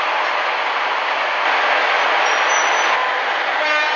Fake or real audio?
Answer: real